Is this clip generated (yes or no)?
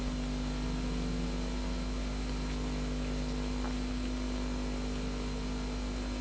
no